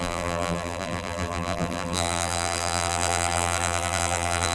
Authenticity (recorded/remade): remade